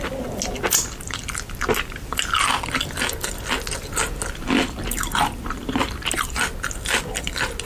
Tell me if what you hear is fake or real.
real